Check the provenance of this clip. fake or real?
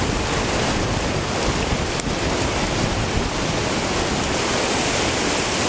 real